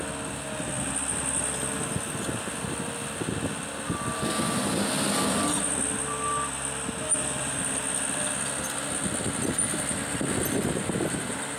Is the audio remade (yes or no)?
no